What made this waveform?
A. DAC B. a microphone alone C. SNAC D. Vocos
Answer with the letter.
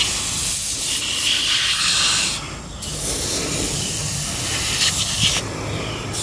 B